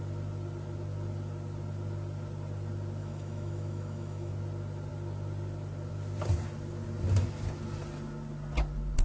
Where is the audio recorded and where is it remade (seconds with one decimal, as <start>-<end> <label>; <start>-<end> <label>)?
0.0-3.0 recorded; 3.0-4.3 remade; 4.3-9.0 recorded

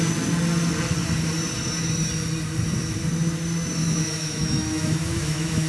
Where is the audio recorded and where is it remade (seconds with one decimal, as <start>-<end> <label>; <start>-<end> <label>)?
0.0-3.8 recorded; 3.8-5.7 remade